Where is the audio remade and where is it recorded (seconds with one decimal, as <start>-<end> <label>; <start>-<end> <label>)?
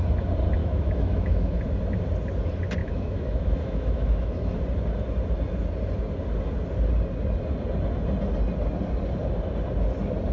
0.0-0.6 recorded; 0.6-1.8 remade; 1.8-2.8 recorded; 2.8-4.6 remade; 4.6-10.3 recorded